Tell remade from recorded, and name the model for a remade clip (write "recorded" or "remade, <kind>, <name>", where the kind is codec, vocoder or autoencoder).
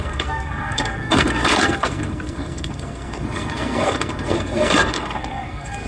remade, codec, SNAC